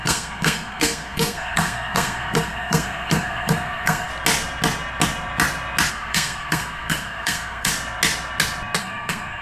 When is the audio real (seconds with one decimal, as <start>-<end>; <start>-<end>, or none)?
4.1-5.9; 7.7-8.8